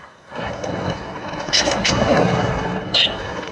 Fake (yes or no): yes